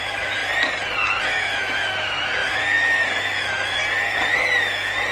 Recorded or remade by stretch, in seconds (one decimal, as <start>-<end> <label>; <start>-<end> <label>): 0.0-0.4 remade; 0.4-1.2 recorded; 1.2-3.8 remade; 3.8-4.6 recorded; 4.6-5.1 remade